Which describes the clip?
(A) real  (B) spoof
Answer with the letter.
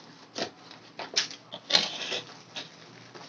A